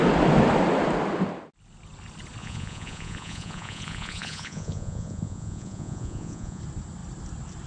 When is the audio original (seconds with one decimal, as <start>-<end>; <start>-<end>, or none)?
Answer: 0.0-2.4; 6.6-7.7